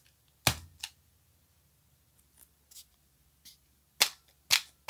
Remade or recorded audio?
recorded